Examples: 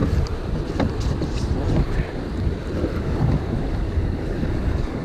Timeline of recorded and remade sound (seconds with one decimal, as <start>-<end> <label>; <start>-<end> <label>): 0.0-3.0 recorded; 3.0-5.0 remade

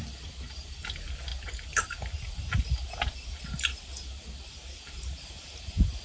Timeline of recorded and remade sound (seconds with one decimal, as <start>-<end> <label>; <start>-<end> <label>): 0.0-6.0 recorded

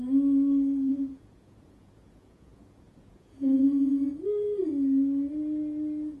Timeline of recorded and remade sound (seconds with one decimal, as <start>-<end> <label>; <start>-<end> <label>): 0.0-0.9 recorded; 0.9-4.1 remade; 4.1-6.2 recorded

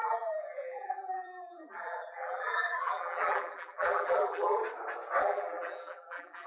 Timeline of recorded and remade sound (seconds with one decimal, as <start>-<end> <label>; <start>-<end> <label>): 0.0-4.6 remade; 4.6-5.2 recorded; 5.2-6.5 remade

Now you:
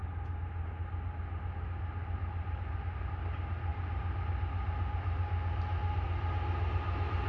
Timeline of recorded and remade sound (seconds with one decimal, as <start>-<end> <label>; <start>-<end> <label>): 0.0-7.3 recorded